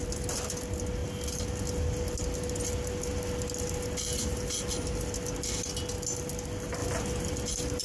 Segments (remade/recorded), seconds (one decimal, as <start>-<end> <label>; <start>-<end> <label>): 0.0-7.8 recorded